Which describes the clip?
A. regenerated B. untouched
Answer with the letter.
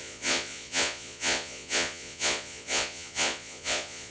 A